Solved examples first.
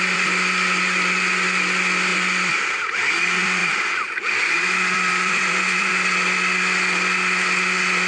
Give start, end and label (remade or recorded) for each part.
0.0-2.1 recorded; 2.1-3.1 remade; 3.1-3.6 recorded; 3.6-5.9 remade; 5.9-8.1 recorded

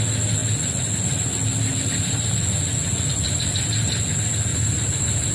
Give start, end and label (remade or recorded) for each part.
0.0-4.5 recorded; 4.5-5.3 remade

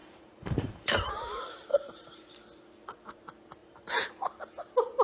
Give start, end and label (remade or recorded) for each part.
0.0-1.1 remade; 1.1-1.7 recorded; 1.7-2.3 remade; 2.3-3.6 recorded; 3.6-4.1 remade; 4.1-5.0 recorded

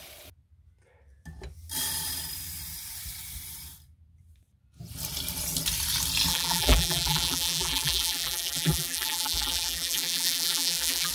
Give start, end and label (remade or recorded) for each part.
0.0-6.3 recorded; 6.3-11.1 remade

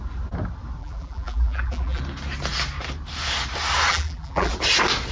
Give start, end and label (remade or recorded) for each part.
0.0-0.8 recorded; 0.8-2.0 remade; 2.0-3.9 recorded; 3.9-4.5 remade; 4.5-5.1 recorded

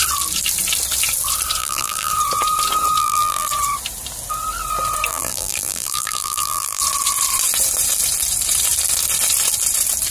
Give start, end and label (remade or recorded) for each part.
0.0-1.6 recorded; 1.6-2.1 remade; 2.1-3.0 recorded; 3.0-3.5 remade; 3.5-5.1 recorded; 5.1-6.8 remade; 6.8-10.1 recorded

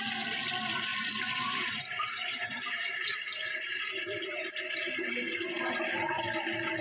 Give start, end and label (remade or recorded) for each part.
0.0-0.9 recorded; 0.9-4.5 remade; 4.5-6.8 recorded

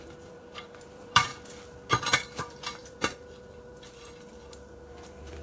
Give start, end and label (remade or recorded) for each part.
0.0-1.3 remade; 1.3-2.0 recorded; 2.0-5.4 remade